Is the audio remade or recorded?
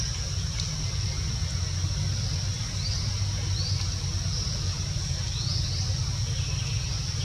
recorded